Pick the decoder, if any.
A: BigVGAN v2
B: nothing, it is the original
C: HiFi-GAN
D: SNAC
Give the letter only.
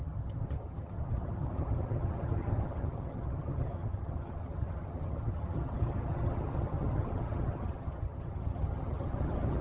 C